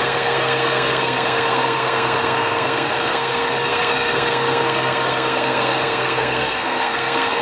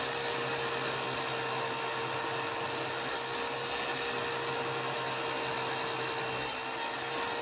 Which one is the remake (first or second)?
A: first